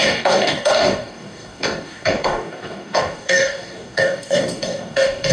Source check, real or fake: fake